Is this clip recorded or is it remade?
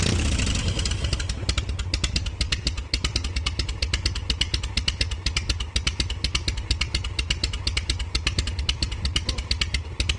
recorded